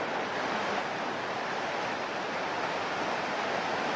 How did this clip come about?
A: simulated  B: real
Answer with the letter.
B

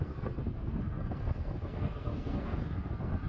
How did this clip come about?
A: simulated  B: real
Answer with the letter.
A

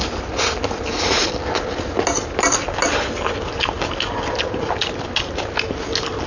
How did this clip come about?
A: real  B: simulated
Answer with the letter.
A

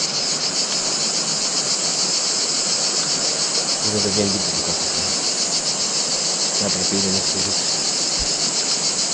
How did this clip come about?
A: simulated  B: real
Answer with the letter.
B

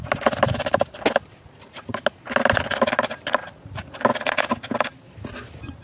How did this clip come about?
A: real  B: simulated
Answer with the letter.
A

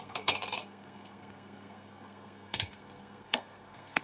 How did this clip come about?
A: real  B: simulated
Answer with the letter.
B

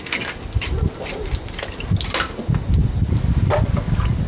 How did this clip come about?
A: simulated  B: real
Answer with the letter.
B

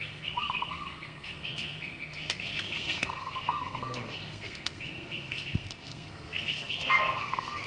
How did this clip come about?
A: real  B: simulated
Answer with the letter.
B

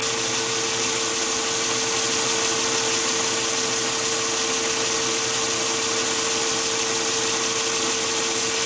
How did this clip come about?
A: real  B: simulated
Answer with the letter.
A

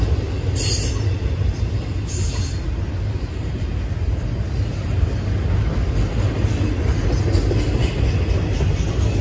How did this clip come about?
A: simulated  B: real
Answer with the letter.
B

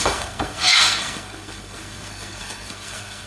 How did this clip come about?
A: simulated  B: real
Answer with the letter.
A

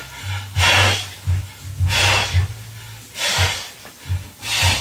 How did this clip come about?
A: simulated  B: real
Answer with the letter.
B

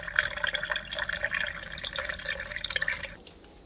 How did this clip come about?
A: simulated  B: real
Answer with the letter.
B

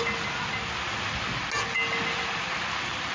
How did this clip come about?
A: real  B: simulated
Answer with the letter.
A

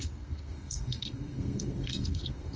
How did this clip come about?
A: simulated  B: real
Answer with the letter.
A